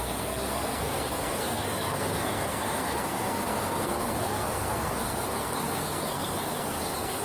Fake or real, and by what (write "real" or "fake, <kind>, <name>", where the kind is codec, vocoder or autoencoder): fake, codec, SNAC